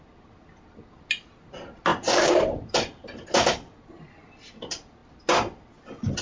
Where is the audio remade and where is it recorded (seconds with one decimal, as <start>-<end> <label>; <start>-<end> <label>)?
0.0-1.9 recorded; 1.9-3.8 remade; 3.8-6.2 recorded